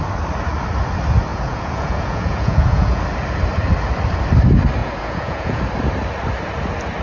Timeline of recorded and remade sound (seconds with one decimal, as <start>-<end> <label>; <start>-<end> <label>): 0.0-1.3 recorded; 1.3-3.0 remade; 3.0-4.8 recorded; 4.8-5.6 remade; 5.6-7.0 recorded